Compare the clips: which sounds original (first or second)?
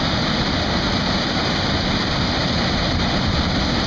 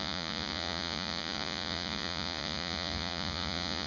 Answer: first